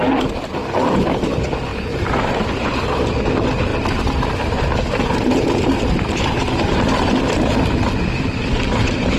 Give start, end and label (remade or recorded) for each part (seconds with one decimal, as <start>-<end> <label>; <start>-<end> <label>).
0.0-1.7 recorded; 1.7-2.8 remade; 2.8-3.7 recorded; 3.7-6.3 remade; 6.3-9.2 recorded